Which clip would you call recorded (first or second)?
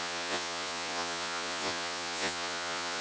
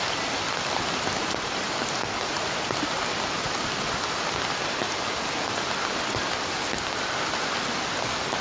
second